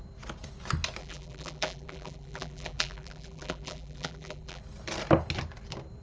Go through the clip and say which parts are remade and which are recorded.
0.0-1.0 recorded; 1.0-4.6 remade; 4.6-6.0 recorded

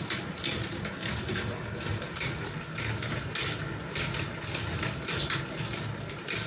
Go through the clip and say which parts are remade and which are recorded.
0.0-6.5 recorded

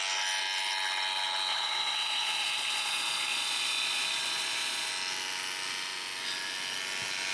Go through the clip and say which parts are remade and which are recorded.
0.0-1.5 recorded; 1.5-4.9 remade; 4.9-7.3 recorded

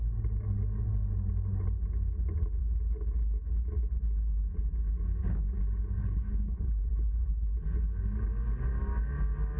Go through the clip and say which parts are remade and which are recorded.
0.0-6.0 recorded; 6.0-7.3 remade; 7.3-9.6 recorded